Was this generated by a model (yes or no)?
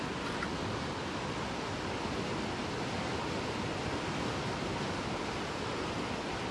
no